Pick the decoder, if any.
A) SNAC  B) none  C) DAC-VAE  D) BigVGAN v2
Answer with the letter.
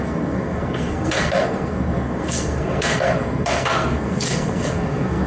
A